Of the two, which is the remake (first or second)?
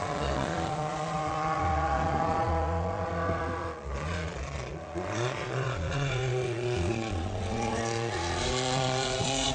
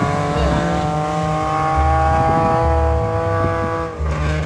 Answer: first